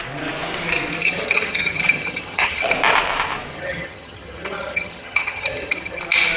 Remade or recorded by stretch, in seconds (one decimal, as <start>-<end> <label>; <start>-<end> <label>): 0.0-1.0 recorded; 1.0-2.7 remade; 2.7-3.5 recorded; 3.5-6.0 remade; 6.0-6.4 recorded